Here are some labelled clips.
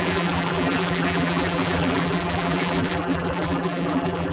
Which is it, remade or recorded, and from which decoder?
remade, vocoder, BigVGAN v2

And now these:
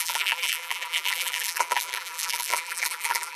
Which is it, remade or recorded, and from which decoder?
remade, vocoder, BigVGAN v2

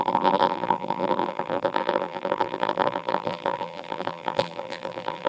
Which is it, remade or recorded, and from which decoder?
remade, vocoder, BigVGAN v2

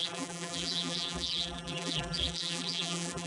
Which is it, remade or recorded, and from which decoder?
remade, vocoder, BigVGAN v2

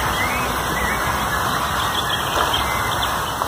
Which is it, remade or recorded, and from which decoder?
recorded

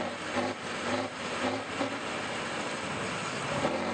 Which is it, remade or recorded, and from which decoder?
recorded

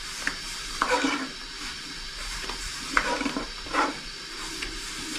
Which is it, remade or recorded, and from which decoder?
remade, vocoder, BigVGAN v2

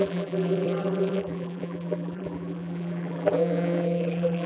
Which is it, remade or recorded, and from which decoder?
remade, vocoder, BigVGAN v2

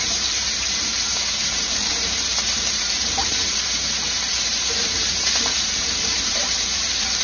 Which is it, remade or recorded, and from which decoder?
remade, vocoder, BigVGAN v2